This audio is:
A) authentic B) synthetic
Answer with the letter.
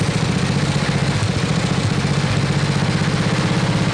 A